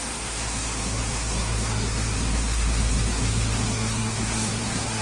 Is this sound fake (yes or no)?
yes